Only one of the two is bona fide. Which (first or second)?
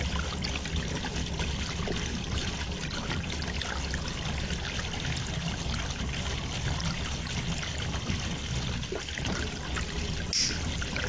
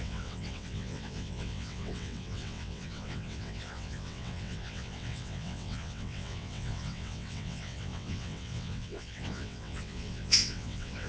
first